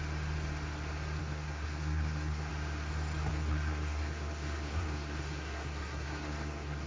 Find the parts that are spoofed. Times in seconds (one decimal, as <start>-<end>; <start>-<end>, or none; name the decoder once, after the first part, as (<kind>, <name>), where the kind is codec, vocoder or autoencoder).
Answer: 1.2-2.5 (codec, SNAC); 3.3-6.9